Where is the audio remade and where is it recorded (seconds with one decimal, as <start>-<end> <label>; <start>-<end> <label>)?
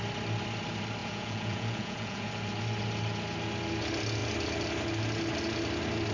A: 0.0-1.0 recorded; 1.0-2.3 remade; 2.3-6.1 recorded